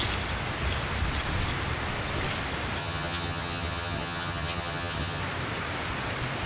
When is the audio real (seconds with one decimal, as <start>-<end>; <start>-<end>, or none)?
0.0-2.8; 5.2-6.5